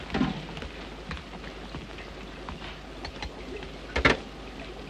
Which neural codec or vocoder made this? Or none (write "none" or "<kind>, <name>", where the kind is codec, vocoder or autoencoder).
none